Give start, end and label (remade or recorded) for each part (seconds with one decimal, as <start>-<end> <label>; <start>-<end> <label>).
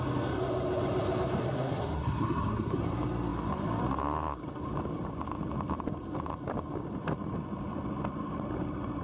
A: 0.0-1.4 recorded; 1.4-2.8 remade; 2.8-9.0 recorded